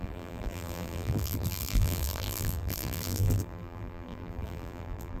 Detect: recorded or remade remade